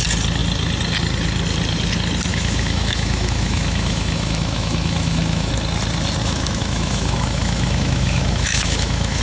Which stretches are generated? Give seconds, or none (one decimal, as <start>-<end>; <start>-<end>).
2.3-5.5; 6.2-9.2